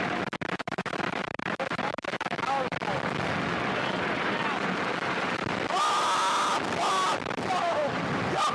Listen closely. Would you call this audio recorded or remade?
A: recorded